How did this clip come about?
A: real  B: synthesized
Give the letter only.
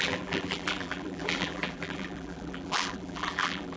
B